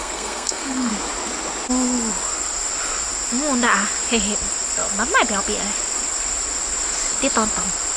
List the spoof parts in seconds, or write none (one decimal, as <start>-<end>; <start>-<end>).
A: 0.0-0.9